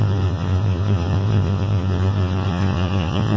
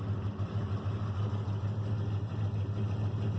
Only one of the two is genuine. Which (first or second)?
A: second